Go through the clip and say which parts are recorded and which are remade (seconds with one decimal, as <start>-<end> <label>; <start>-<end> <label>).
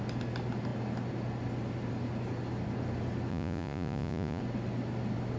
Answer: 0.0-3.3 recorded; 3.3-4.4 remade; 4.4-5.4 recorded